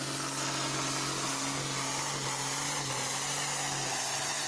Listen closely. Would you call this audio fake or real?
real